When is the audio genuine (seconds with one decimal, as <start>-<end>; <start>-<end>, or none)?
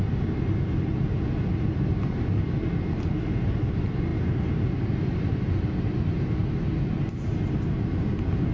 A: 0.0-8.5